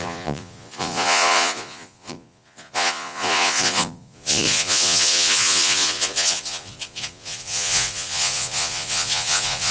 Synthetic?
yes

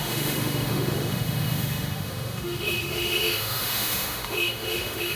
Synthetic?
yes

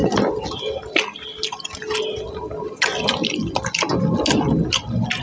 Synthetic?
no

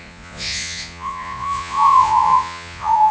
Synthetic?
yes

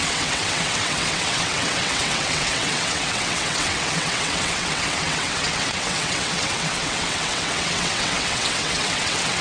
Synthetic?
yes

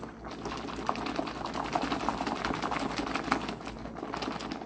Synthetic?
no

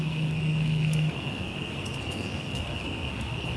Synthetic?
yes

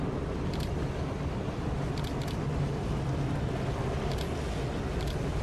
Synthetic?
no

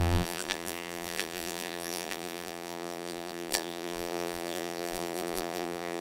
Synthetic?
yes